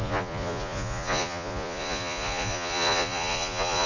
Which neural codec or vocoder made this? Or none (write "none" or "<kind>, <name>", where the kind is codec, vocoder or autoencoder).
vocoder, Vocos